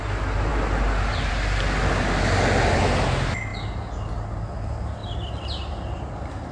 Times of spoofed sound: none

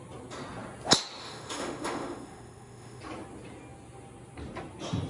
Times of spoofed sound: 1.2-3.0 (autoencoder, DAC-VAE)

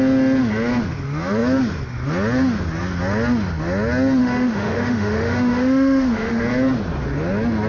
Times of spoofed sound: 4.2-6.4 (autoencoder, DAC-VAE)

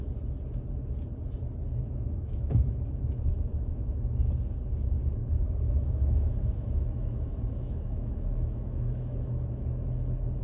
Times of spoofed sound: 1.8-4.2 (autoencoder, DAC-VAE); 5.2-9.5

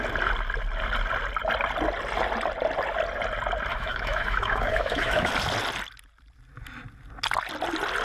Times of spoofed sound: 3.7-5.3 (autoencoder, DAC-VAE)